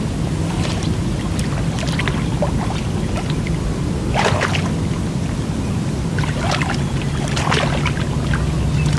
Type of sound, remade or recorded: recorded